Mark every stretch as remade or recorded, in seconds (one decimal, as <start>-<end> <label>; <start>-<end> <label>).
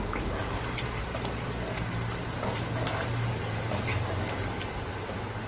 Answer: 0.0-1.0 remade; 1.0-2.1 recorded; 2.1-3.9 remade; 3.9-5.5 recorded